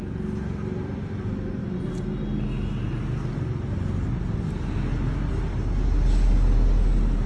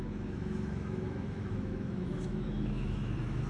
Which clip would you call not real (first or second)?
second